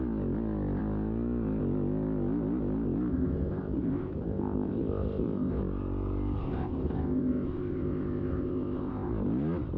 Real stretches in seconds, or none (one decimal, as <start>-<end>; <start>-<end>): 0.0-3.1; 5.6-6.4; 9.1-9.8